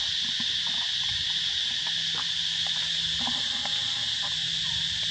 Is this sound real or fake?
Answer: real